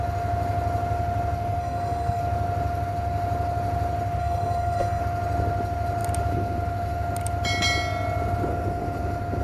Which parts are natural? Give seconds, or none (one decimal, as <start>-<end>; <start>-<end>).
0.0-1.6; 2.2-4.2; 5.0-9.4

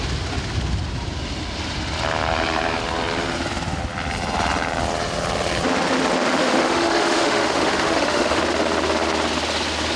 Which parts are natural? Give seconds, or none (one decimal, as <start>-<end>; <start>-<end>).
0.0-6.4; 8.4-10.0

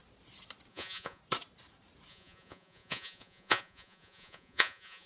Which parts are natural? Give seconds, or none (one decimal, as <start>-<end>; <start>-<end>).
0.0-0.7; 1.2-2.1

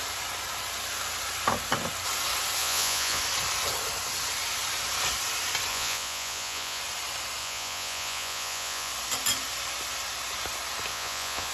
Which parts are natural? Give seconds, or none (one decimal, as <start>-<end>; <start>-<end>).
0.0-2.6; 3.2-5.7; 6.8-7.4; 8.9-10.9

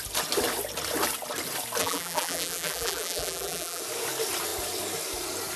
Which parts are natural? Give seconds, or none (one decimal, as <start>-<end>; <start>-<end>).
0.0-1.8; 3.8-5.6

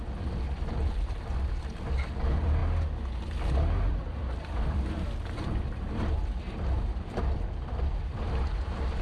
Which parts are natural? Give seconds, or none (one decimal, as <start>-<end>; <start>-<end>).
2.6-3.8

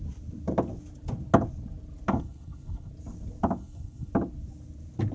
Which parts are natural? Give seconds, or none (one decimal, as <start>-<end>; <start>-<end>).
0.0-2.1; 2.9-3.6; 4.1-5.1

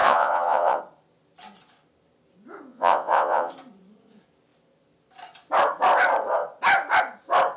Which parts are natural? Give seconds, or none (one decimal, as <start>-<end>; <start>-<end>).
0.8-2.7; 3.5-7.6